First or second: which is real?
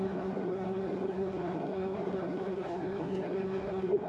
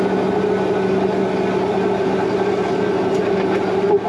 second